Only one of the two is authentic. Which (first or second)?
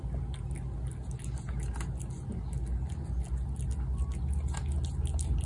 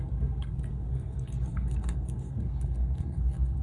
first